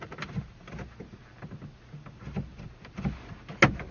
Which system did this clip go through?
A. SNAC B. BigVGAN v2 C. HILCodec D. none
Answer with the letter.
D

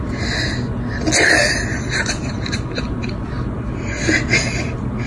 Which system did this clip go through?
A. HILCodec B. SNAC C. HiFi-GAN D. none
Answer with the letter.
D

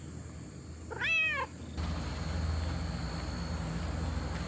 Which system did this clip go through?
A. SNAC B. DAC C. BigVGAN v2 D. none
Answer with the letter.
D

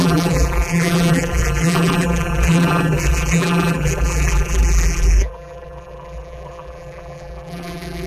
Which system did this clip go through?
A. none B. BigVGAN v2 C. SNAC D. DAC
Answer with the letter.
B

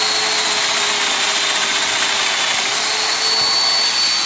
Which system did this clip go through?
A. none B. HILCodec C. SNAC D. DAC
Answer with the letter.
A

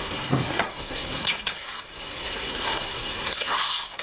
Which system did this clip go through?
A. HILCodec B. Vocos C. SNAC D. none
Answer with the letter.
C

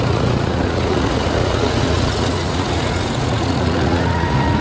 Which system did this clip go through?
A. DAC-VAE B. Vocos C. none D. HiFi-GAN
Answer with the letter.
B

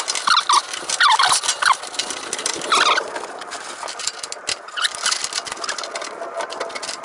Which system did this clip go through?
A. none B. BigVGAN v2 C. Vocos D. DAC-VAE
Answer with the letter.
A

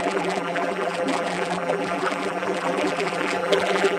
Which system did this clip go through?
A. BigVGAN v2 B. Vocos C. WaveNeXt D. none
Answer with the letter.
A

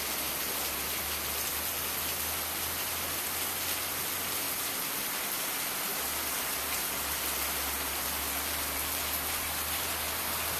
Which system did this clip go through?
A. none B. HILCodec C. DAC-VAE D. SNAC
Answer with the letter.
A